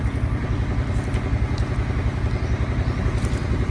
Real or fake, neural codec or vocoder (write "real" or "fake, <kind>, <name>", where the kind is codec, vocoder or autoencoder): real